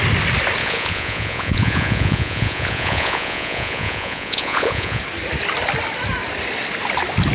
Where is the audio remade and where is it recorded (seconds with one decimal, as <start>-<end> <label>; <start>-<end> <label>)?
0.0-0.6 recorded; 0.6-5.0 remade; 5.0-7.3 recorded